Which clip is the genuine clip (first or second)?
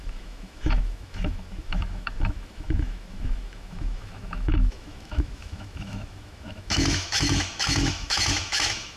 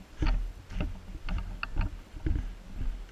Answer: second